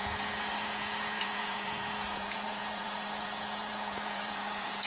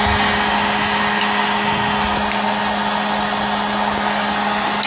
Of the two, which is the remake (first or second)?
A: first